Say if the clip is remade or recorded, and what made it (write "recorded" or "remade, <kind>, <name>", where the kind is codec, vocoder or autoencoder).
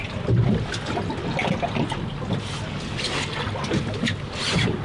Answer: recorded